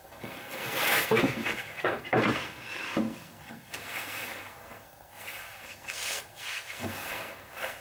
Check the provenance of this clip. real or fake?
fake